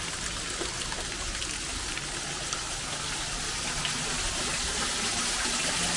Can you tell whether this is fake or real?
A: real